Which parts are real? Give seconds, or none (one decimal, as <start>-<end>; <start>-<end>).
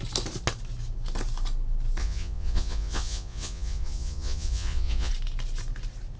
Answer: 0.0-2.0; 5.1-6.2